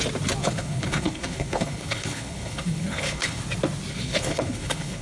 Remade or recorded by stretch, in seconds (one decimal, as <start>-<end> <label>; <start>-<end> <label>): 0.0-0.4 recorded; 0.4-3.4 remade; 3.4-3.9 recorded; 3.9-5.0 remade